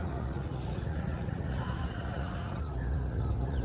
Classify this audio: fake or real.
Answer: fake